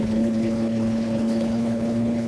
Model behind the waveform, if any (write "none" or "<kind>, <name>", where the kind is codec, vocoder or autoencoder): codec, HILCodec